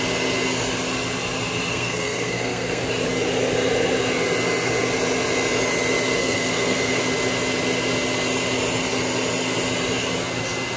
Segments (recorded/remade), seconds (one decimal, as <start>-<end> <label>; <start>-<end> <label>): 0.0-1.7 recorded; 1.7-2.8 remade; 2.8-6.2 recorded; 6.2-7.0 remade; 7.0-10.8 recorded